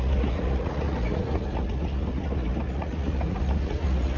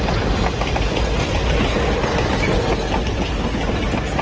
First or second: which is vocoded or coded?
first